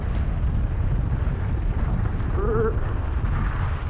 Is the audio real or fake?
real